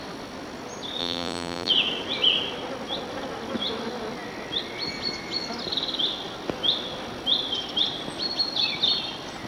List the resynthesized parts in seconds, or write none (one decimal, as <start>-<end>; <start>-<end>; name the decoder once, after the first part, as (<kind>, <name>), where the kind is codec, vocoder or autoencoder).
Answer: 1.0-1.7 (vocoder, BigVGAN v2)